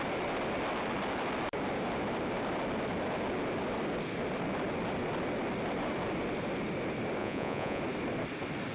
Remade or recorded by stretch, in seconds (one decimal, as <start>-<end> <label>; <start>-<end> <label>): 0.0-7.2 recorded; 7.2-7.8 remade; 7.8-8.7 recorded